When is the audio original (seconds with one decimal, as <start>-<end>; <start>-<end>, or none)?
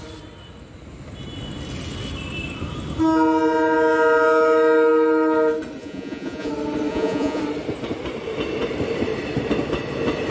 0.0-5.8; 6.5-6.9; 7.4-10.3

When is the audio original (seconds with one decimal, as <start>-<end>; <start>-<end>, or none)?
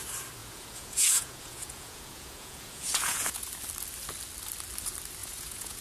0.0-0.4; 3.5-5.2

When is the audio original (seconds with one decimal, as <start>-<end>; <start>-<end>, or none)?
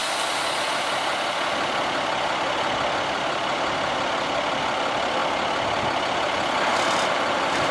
0.0-7.7